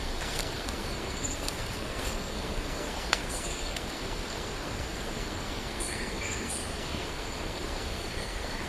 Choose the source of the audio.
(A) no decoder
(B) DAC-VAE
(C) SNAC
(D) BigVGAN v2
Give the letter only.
C